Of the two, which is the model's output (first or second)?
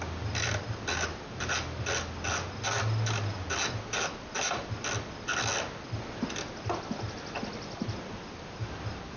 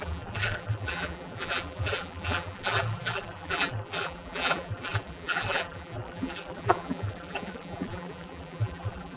second